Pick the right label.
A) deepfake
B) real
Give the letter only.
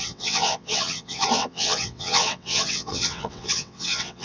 A